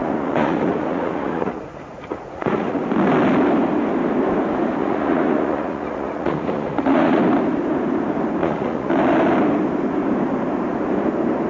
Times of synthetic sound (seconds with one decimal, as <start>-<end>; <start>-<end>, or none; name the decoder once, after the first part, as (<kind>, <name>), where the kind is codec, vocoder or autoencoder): 0.0-2.8 (vocoder, Vocos); 4.8-7.2; 8.4-8.9